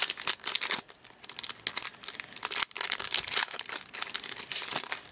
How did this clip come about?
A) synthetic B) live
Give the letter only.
B